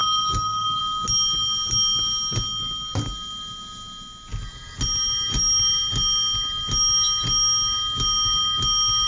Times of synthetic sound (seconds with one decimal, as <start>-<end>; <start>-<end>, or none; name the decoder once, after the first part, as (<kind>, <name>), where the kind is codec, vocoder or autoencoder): 0.0-0.8 (codec, DAC)